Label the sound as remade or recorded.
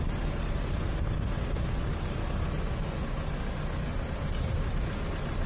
recorded